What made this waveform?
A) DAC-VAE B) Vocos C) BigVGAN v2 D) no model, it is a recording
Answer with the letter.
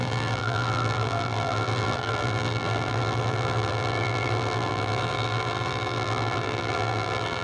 C